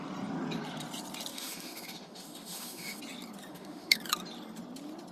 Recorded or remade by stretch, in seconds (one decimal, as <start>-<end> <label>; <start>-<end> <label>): 0.0-1.3 recorded; 1.3-3.0 remade; 3.0-3.5 recorded; 3.5-4.0 remade; 4.0-5.1 recorded